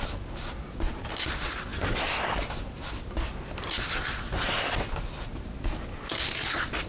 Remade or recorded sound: recorded